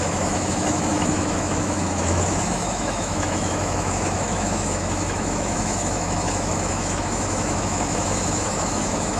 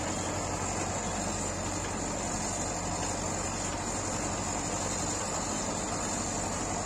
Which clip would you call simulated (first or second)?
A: first